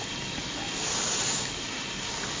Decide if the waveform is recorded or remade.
recorded